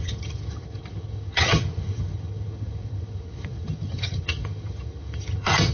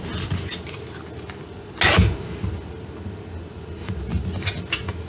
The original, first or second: second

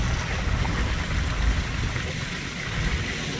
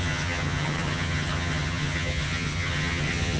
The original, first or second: first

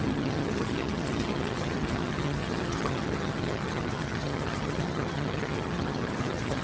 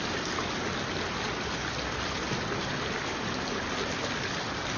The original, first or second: second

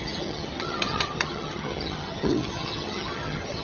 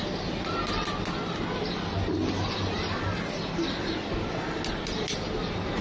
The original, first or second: second